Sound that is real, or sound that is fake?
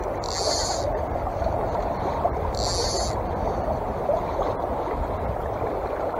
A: real